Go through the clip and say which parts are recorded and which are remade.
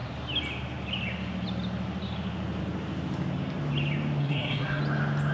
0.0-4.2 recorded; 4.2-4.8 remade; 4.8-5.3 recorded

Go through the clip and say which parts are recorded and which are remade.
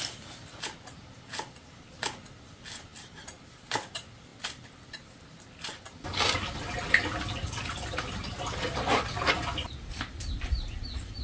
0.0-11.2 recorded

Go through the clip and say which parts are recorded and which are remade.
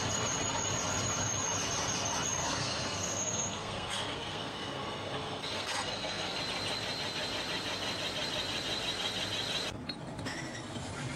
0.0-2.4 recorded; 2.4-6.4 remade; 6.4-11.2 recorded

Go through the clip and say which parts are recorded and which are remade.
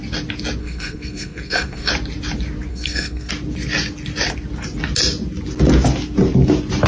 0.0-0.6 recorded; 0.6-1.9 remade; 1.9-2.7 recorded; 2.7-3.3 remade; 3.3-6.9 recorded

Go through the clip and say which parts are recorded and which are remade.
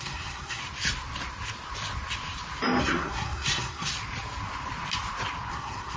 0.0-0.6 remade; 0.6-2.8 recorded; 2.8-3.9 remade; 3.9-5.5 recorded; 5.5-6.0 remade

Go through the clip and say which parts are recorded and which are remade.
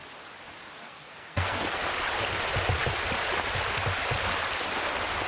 0.0-0.8 recorded; 0.8-1.8 remade; 1.8-5.3 recorded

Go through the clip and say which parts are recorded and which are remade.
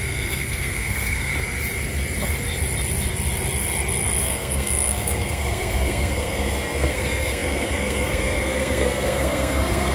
0.0-1.3 remade; 1.3-4.2 recorded; 4.2-9.9 remade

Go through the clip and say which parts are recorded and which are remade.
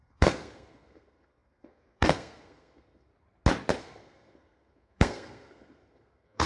0.0-3.1 remade; 3.1-3.8 recorded; 3.8-6.5 remade